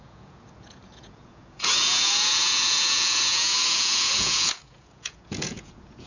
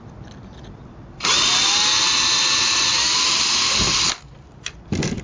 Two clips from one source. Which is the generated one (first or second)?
first